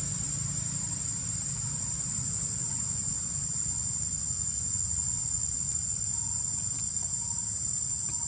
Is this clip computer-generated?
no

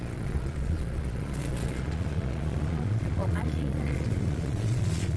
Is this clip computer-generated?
yes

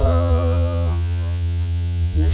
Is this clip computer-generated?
yes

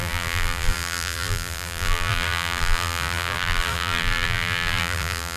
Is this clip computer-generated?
yes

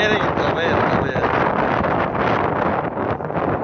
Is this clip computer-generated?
no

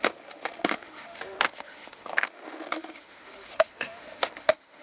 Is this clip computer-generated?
yes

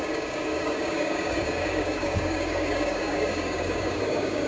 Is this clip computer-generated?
yes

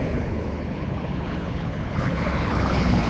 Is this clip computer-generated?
yes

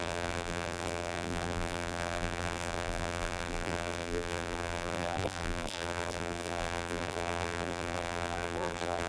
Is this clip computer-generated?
yes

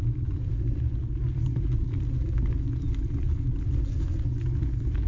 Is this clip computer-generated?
no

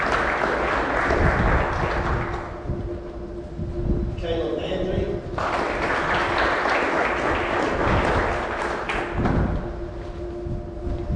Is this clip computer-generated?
no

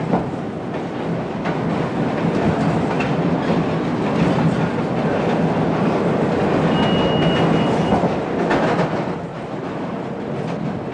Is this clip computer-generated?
no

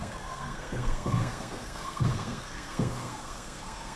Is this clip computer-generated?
yes